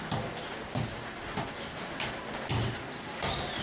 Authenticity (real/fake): real